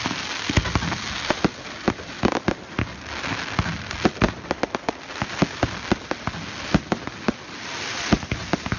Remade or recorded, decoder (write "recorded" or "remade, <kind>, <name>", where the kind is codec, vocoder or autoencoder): recorded